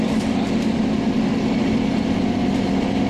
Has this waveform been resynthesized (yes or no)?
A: no